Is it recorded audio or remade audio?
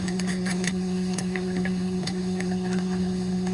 remade